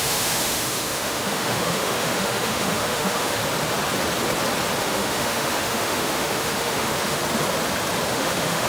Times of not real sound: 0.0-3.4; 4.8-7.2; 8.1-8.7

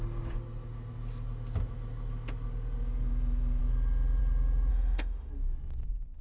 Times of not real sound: 4.7-5.3

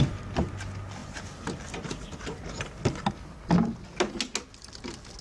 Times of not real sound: none